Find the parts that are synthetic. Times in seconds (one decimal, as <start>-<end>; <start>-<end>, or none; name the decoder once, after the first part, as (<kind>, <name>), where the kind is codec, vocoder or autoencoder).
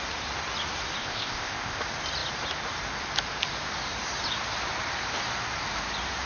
1.0-1.8 (codec, ZipCodec)